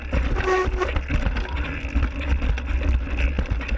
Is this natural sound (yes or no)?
yes